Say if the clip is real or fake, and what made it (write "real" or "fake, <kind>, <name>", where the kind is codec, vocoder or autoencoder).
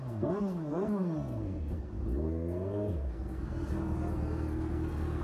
fake, codec, SNAC